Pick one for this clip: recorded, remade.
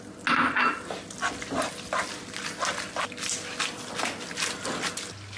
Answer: recorded